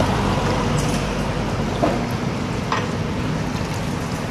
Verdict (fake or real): real